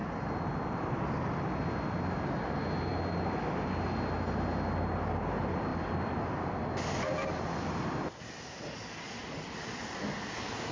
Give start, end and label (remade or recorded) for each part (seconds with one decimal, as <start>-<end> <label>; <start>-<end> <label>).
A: 0.0-10.7 recorded